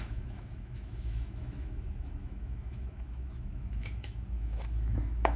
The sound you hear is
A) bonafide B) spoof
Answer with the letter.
B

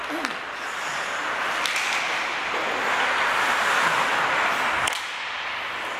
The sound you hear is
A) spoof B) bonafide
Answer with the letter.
B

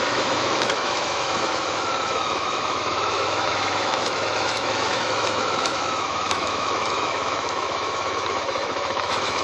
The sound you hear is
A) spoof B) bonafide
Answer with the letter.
A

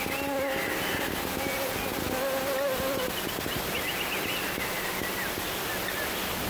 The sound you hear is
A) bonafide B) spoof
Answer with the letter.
A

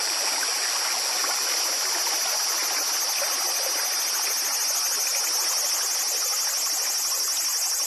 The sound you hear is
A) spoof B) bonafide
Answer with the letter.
B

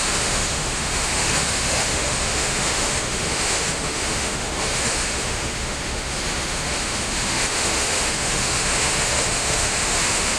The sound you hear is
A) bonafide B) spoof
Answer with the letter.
B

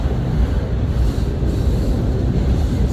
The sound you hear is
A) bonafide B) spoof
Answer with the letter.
A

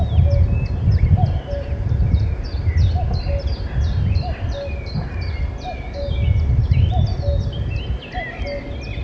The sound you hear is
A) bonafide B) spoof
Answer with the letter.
A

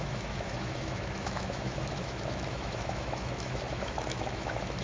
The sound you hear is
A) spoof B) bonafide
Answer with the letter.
A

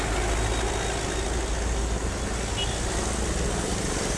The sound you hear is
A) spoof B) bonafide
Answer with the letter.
B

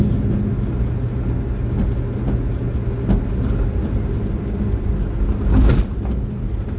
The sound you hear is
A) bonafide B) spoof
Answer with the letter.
A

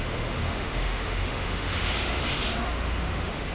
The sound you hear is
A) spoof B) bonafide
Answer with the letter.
A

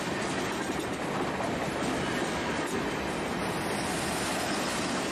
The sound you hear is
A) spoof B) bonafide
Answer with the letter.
B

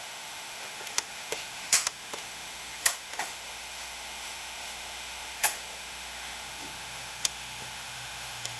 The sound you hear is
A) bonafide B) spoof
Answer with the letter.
B